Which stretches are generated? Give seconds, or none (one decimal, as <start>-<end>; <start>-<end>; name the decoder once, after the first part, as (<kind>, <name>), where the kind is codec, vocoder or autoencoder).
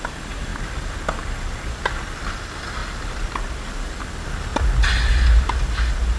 none